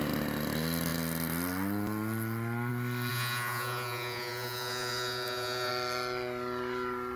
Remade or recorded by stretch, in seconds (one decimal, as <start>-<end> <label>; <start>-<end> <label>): 0.0-3.1 recorded; 3.1-5.7 remade; 5.7-7.2 recorded